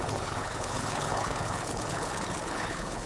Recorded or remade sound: remade